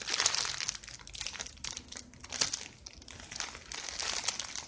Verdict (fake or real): real